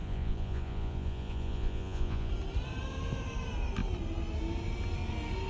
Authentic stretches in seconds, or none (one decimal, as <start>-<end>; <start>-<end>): 2.3-5.5